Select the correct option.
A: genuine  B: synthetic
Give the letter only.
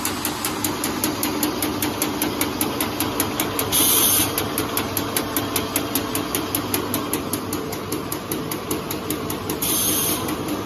A